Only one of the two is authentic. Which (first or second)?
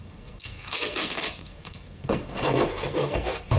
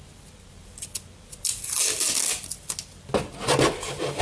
second